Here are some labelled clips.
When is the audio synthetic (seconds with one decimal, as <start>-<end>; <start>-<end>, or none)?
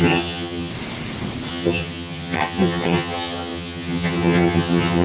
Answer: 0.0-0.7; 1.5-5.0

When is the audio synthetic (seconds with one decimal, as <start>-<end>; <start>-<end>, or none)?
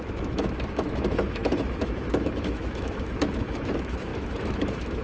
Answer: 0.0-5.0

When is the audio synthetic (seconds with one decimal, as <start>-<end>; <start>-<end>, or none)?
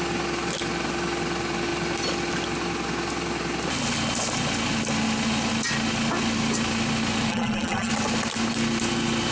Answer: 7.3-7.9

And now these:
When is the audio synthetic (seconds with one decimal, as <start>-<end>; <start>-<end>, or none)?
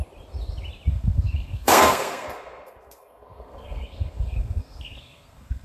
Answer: 0.9-5.6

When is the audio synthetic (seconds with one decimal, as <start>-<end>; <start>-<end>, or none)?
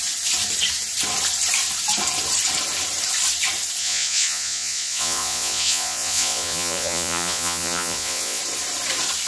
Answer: 3.8-8.4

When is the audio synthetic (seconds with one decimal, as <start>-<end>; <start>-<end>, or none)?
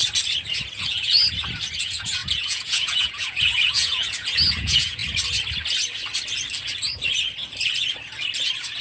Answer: 0.7-1.2; 1.8-5.0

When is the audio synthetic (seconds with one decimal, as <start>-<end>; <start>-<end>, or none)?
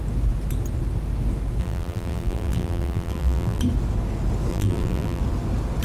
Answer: 1.6-3.6; 4.5-5.2